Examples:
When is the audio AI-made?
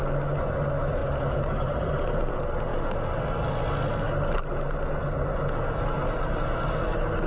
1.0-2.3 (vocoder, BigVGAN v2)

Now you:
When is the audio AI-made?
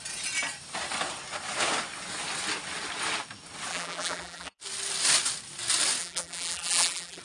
3.7-4.6 (vocoder, BigVGAN v2); 6.0-7.2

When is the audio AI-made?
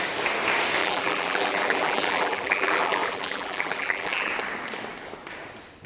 0.8-4.3 (vocoder, BigVGAN v2)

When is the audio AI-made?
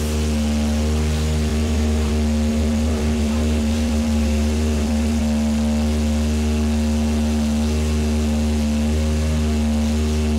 1.5-2.1 (vocoder, BigVGAN v2); 2.5-5.2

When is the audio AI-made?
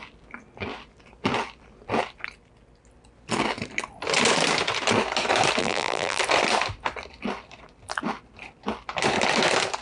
5.6-6.2 (vocoder, BigVGAN v2)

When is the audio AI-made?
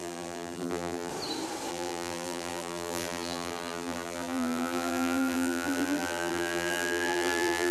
0.0-1.1 (vocoder, BigVGAN v2); 1.7-7.7